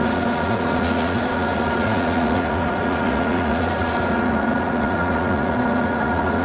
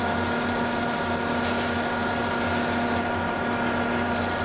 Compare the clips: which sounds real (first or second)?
second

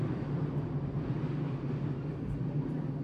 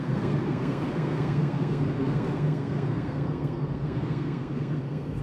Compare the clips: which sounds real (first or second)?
first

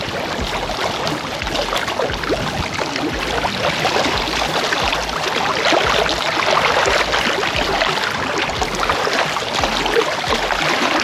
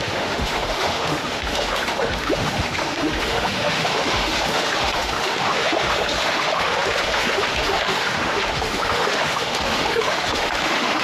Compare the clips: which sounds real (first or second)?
first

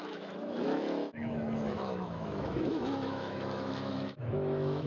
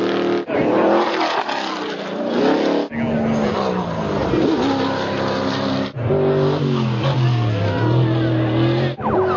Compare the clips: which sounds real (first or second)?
second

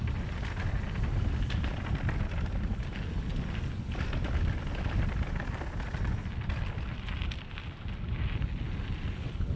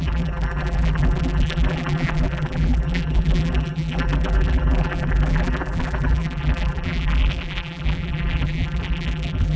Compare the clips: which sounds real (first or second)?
first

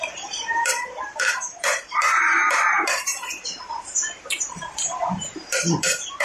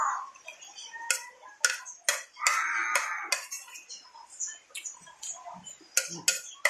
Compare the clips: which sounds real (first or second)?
second